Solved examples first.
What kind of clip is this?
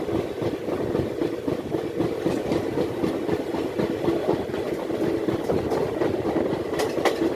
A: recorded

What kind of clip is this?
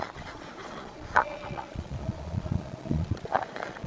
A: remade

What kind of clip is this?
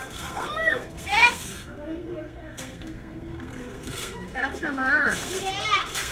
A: remade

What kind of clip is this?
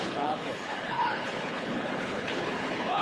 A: remade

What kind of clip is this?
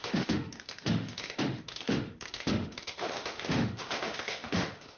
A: remade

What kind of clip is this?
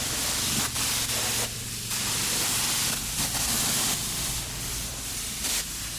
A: remade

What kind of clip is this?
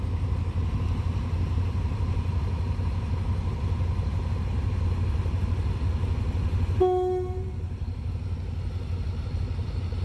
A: recorded